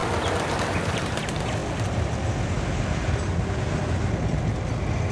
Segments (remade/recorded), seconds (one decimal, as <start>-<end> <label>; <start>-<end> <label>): 0.0-0.6 recorded; 0.6-1.6 remade; 1.6-5.1 recorded